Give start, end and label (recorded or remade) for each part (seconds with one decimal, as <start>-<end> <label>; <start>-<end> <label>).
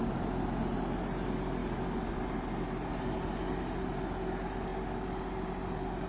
0.0-6.1 recorded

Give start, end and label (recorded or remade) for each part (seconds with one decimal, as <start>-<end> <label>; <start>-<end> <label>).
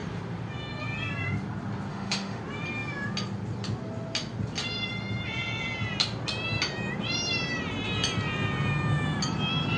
0.0-1.9 recorded; 1.9-2.4 remade; 2.4-9.8 recorded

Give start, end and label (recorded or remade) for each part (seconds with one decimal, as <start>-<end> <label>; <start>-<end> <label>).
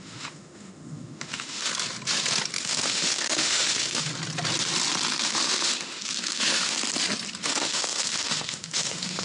0.0-1.7 remade; 1.7-2.6 recorded; 2.6-4.1 remade; 4.1-5.2 recorded; 5.2-6.8 remade; 6.8-7.4 recorded; 7.4-9.2 remade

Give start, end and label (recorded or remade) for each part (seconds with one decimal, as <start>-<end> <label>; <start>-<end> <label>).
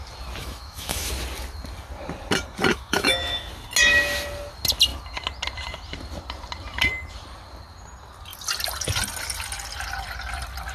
0.0-0.4 recorded; 0.4-1.1 remade; 1.1-2.7 recorded; 2.7-3.5 remade; 3.5-10.7 recorded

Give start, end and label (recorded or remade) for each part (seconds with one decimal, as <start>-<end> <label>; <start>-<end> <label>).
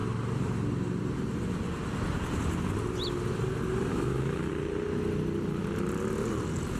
0.0-3.9 recorded; 3.9-4.5 remade; 4.5-6.8 recorded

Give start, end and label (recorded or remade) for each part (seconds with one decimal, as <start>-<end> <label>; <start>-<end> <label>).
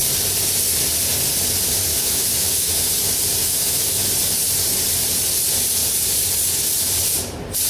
0.0-1.9 recorded; 1.9-2.9 remade; 2.9-3.4 recorded; 3.4-3.9 remade; 3.9-7.7 recorded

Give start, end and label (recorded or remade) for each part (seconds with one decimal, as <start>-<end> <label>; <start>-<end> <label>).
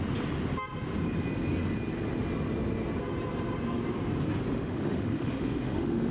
0.0-4.5 recorded; 4.5-6.1 remade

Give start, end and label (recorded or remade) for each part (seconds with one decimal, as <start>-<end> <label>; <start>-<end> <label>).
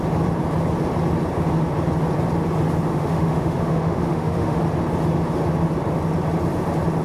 0.0-2.9 recorded; 2.9-4.6 remade; 4.6-7.0 recorded